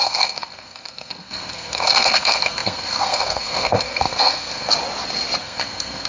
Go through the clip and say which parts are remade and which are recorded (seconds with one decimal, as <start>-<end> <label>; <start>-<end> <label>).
0.0-4.7 remade; 4.7-5.4 recorded; 5.4-6.1 remade